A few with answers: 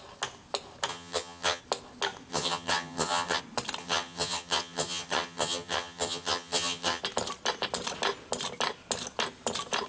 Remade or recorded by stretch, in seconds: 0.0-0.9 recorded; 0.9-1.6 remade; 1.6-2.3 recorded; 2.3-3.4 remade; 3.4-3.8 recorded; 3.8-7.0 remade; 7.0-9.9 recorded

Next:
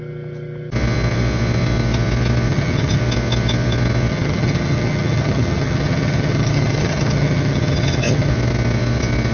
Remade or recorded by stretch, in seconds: 0.0-2.5 recorded; 2.5-3.0 remade; 3.0-4.1 recorded; 4.1-8.3 remade; 8.3-9.3 recorded

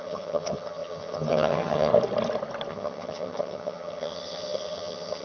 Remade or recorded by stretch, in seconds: 0.0-1.9 remade; 1.9-2.7 recorded; 2.7-5.2 remade

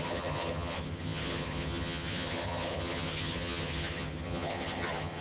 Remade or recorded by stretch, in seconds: 0.0-5.2 remade

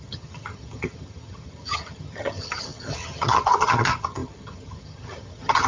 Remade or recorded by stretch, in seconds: 0.0-5.7 remade

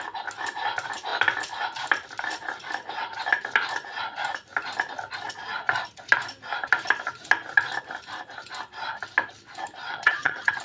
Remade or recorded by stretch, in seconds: 0.0-9.9 recorded; 9.9-10.6 remade